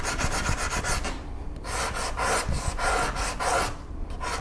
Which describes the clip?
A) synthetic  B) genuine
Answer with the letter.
B